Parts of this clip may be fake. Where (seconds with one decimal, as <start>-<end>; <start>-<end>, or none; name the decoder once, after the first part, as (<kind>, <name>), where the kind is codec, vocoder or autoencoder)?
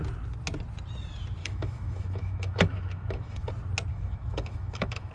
1.4-3.5 (autoencoder, DAC-VAE); 3.9-5.1